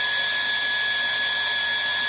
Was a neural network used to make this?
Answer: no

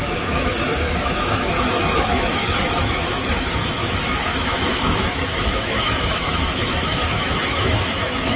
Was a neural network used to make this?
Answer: yes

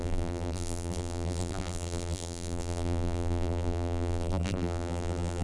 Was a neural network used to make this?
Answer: yes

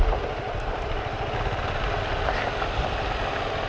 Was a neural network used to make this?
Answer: no